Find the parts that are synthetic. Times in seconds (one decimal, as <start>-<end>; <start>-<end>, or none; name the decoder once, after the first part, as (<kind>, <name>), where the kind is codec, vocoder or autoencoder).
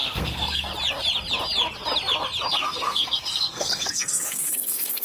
0.0-0.7 (codec, SNAC); 2.5-5.0